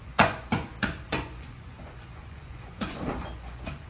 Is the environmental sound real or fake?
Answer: fake